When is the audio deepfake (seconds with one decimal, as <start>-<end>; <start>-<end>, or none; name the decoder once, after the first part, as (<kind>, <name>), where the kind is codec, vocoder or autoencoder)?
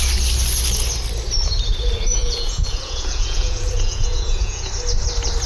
2.2-4.7 (vocoder, Vocos)